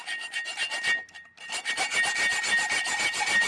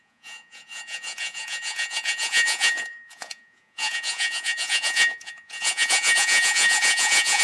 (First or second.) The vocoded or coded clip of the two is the second